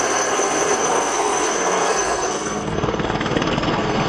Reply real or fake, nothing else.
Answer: fake